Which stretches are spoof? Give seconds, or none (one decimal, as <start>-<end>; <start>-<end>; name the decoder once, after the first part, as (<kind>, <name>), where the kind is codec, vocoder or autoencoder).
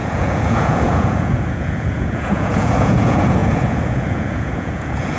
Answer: 0.0-5.2 (vocoder, Vocos)